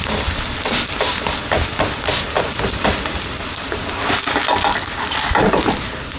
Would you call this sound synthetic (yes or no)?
yes